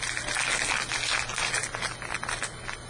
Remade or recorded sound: recorded